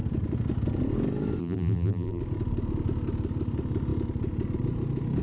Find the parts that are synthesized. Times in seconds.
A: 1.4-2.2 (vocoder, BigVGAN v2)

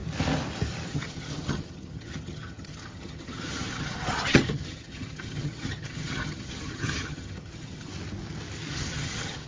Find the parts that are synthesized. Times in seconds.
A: 0.9-7.9 (vocoder, HiFi-GAN); 8.7-9.5

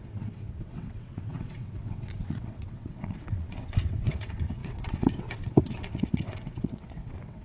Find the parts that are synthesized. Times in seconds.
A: 0.0-7.4 (vocoder, WaveNeXt)